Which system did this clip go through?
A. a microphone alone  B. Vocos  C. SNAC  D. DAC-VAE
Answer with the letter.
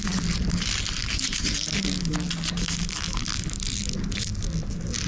A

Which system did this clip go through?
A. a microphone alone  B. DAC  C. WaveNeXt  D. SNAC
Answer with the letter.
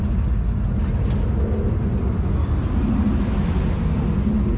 A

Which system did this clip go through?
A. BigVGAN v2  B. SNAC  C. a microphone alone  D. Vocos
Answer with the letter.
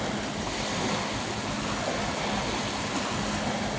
C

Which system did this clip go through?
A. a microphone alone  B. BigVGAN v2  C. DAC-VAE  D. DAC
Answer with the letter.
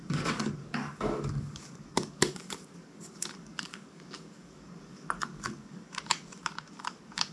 D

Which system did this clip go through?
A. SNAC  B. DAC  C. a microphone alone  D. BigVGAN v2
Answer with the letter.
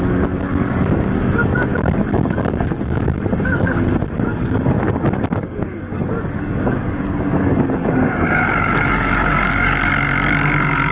B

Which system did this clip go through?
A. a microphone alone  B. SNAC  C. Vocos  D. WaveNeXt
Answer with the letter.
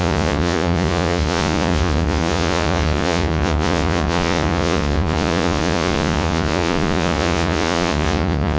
C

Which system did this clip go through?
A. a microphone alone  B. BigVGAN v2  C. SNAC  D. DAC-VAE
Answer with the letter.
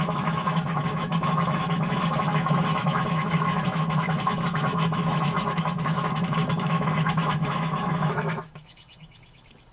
D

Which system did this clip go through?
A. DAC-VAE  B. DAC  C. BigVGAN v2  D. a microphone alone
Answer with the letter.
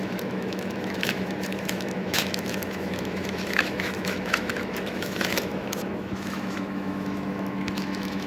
A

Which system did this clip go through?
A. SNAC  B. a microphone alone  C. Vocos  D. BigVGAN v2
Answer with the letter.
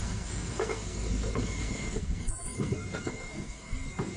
A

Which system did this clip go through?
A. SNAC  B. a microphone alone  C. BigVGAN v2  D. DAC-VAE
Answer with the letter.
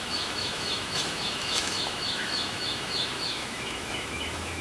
D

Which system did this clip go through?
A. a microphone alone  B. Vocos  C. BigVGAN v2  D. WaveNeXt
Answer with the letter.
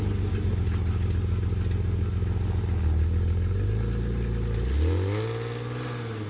A